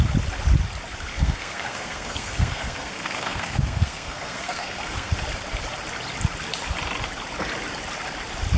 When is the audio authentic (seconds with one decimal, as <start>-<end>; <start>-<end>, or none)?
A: 0.0-1.1; 5.1-8.6